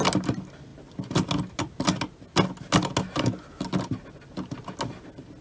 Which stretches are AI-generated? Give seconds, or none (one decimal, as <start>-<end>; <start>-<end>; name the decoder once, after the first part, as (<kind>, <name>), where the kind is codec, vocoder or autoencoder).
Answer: none